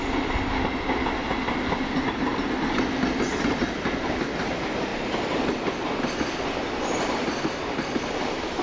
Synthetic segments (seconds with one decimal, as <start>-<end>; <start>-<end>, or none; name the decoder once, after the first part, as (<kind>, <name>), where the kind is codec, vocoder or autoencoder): none